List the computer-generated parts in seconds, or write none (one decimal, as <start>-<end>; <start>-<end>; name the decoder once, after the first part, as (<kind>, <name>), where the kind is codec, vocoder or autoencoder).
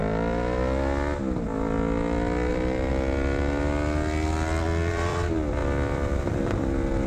2.5-2.9 (vocoder, BigVGAN v2); 4.9-7.1